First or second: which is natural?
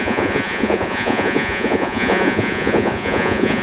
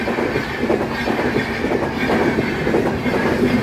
second